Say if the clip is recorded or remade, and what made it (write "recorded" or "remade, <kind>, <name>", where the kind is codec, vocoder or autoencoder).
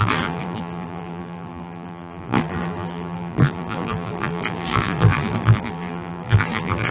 remade, vocoder, BigVGAN v2